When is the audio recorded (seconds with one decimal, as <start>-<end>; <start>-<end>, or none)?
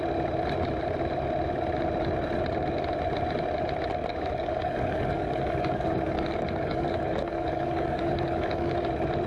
0.0-4.1; 8.9-9.3